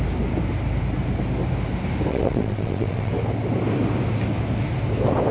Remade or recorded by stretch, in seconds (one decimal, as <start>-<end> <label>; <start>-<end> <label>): 0.0-2.1 recorded; 2.1-3.1 remade; 3.1-5.3 recorded